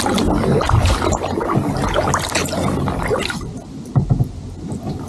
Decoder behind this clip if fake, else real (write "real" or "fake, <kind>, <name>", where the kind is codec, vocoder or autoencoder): real